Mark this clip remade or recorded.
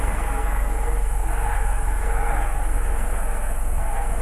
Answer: remade